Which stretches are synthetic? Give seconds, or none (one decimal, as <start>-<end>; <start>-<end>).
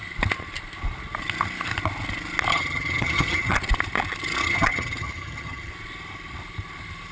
2.5-3.6; 4.4-5.7